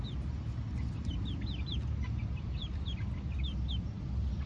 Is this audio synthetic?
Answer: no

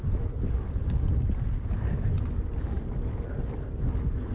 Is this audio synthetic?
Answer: no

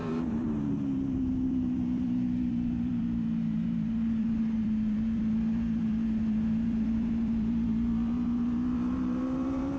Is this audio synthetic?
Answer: yes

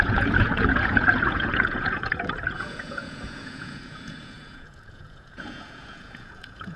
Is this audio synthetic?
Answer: yes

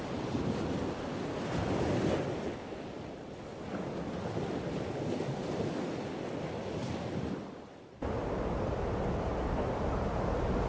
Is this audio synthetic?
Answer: no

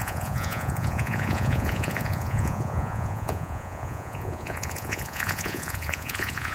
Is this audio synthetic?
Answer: yes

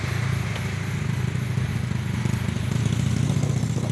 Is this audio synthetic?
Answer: no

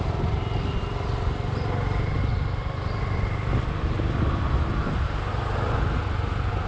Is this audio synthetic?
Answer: no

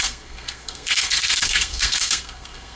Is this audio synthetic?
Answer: yes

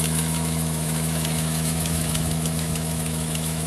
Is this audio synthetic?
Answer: yes